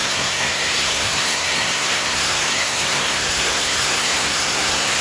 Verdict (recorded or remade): remade